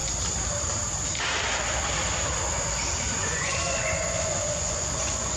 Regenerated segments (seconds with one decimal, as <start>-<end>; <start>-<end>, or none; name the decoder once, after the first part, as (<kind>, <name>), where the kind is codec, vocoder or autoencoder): 3.2-5.4 (vocoder, Vocos)